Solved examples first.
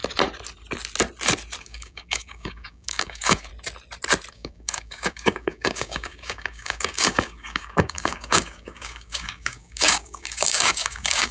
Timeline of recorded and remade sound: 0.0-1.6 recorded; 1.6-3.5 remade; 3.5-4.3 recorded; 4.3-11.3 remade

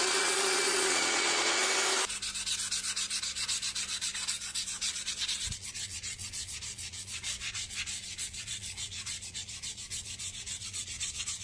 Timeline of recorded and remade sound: 0.0-1.6 remade; 1.6-3.2 recorded; 3.2-11.4 remade

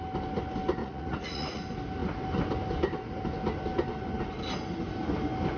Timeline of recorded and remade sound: 0.0-0.8 recorded; 0.8-1.6 remade; 1.6-5.6 recorded

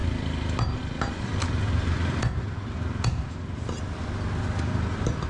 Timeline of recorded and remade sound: 0.0-5.3 recorded

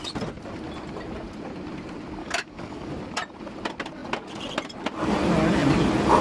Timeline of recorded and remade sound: 0.0-2.2 recorded; 2.2-2.9 remade; 2.9-6.2 recorded

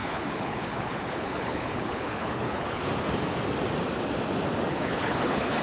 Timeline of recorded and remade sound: 0.0-2.8 remade; 2.8-4.7 recorded; 4.7-5.6 remade

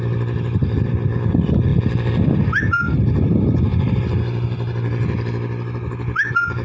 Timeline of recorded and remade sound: 0.0-6.6 recorded